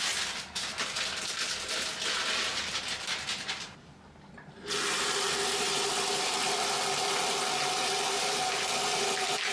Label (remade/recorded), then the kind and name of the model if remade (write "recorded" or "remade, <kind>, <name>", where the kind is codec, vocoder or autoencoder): recorded